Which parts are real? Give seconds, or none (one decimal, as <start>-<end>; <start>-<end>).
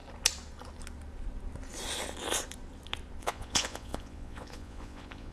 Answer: 0.0-3.2